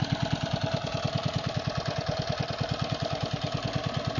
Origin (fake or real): real